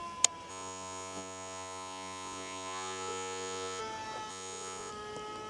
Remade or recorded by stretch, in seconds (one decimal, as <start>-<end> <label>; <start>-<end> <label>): 0.0-0.5 recorded; 0.5-3.8 remade; 3.8-4.3 recorded; 4.3-4.9 remade; 4.9-5.5 recorded